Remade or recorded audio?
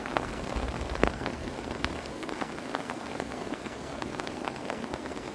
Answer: remade